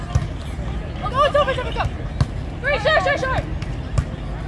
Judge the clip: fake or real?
real